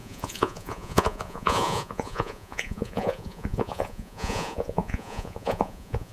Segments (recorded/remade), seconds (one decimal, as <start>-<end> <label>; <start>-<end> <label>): 0.0-6.1 remade